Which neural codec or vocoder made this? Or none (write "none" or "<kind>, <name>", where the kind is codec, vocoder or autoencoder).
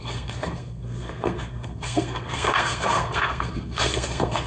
codec, SNAC